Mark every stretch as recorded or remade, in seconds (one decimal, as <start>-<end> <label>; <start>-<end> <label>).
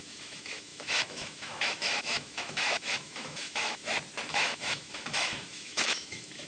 0.0-3.8 remade; 3.8-4.3 recorded; 4.3-6.5 remade